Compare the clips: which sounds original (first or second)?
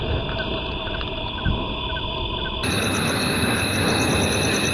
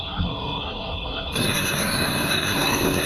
first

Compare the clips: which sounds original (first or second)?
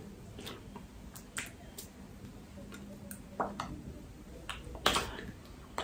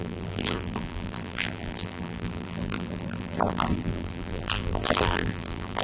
first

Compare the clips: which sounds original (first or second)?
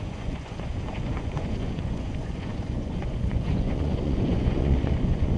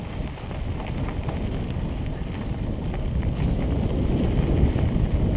second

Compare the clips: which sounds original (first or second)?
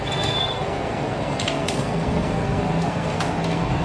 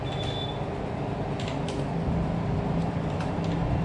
second